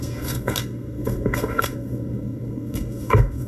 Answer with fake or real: fake